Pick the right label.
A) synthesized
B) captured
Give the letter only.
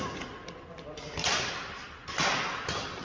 B